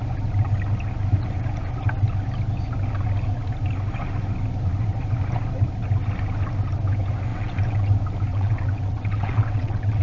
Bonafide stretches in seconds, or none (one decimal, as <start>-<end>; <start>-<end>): 0.0-7.3; 7.9-8.3